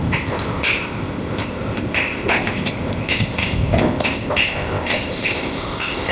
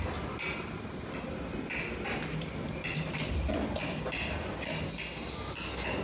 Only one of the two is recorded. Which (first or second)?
second